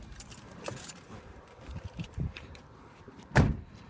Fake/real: fake